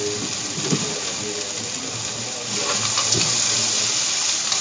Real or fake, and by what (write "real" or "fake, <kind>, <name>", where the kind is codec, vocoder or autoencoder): real